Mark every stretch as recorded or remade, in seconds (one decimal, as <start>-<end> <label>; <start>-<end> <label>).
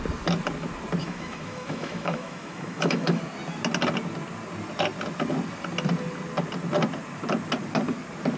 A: 0.0-1.0 recorded; 1.0-3.2 remade; 3.2-8.4 recorded